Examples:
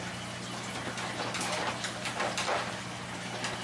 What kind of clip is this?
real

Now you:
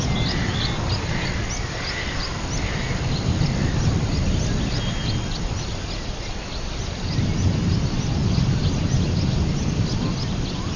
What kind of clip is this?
real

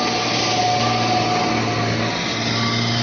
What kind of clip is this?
real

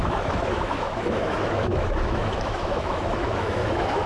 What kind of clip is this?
fake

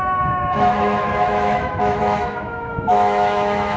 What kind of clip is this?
fake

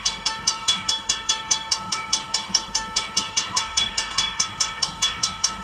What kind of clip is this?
fake